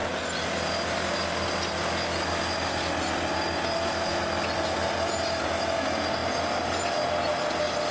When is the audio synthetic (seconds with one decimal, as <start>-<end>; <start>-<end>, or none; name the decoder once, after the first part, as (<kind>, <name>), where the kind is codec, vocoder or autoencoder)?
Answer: none